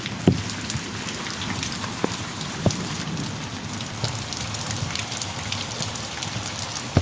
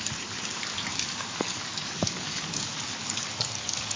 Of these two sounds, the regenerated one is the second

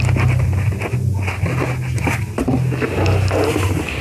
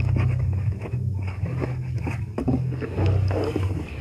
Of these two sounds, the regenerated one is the second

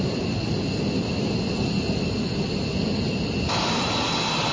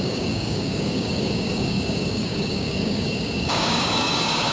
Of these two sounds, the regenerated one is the second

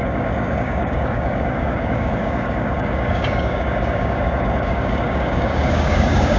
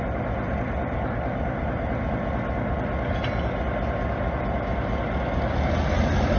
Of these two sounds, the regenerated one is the first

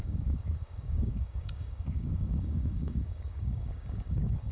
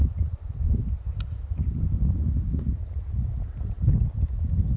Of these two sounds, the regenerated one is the first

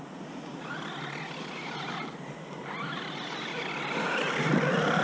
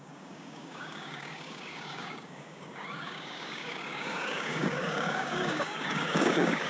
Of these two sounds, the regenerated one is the second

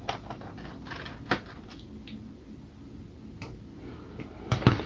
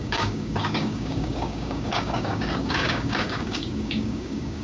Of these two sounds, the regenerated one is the second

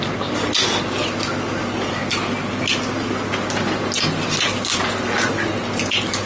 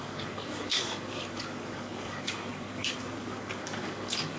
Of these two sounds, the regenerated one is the second